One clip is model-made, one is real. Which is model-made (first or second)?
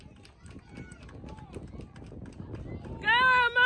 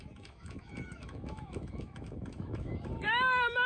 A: second